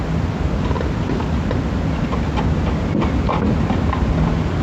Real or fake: real